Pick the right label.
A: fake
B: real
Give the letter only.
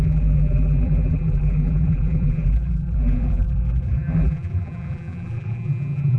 A